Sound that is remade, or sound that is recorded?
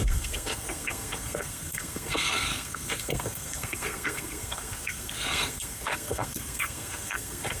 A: remade